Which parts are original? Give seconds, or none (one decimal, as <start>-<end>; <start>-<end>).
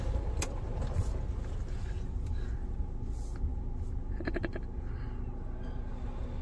0.0-6.4